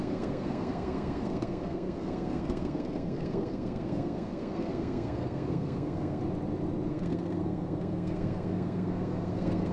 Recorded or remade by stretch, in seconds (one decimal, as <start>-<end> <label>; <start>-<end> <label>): 0.0-6.2 remade; 6.2-6.9 recorded; 6.9-9.7 remade